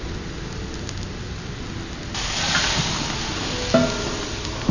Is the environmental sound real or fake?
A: real